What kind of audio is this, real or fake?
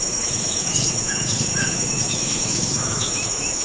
fake